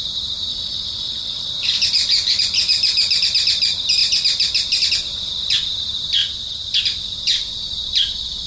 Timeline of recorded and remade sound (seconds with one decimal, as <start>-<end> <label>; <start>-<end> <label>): 0.0-0.5 recorded; 0.5-1.5 remade; 1.5-8.5 recorded